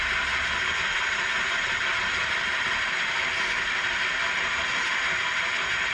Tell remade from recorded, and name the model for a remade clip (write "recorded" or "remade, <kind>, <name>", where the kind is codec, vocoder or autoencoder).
recorded